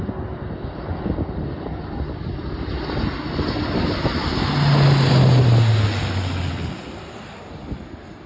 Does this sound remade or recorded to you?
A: recorded